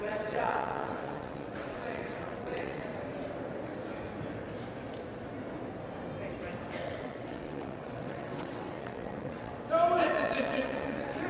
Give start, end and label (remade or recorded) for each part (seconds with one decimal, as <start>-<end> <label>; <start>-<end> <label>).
0.0-2.9 remade; 2.9-6.7 recorded; 6.7-9.5 remade; 9.5-10.1 recorded; 10.1-11.3 remade